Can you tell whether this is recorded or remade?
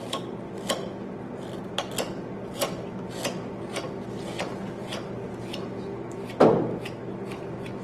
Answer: recorded